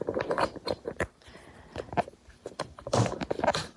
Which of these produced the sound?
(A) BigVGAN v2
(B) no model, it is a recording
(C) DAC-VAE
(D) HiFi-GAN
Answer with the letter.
A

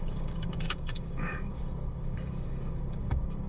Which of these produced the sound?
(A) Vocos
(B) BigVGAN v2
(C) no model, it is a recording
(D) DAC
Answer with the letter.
D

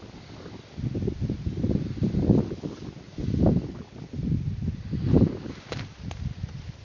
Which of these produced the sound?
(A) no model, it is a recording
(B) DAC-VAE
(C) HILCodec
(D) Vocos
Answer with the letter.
A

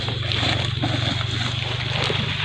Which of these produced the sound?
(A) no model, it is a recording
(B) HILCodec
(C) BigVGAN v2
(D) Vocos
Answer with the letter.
A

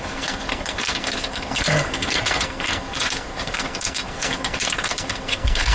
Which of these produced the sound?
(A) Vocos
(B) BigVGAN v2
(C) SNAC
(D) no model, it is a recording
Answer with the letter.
C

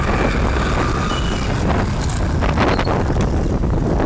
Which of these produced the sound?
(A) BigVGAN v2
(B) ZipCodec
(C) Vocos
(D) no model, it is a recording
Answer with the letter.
D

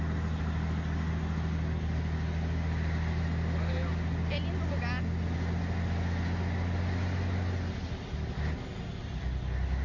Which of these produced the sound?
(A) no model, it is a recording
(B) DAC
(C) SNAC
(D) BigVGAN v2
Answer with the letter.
A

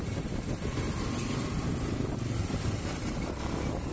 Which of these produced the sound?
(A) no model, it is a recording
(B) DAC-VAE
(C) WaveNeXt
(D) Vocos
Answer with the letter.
A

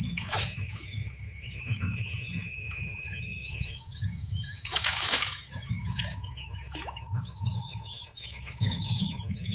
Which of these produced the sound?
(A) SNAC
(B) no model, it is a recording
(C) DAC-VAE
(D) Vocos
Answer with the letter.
C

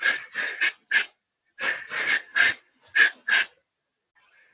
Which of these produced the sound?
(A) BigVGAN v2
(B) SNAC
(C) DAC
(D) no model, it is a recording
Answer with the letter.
D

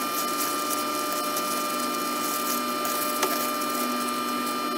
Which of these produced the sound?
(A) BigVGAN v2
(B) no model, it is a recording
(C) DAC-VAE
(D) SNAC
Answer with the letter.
B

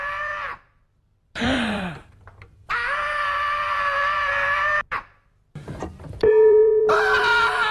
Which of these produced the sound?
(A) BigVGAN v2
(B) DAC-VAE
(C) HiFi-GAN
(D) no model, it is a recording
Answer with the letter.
A